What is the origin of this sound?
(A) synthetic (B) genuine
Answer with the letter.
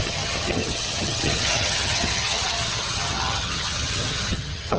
A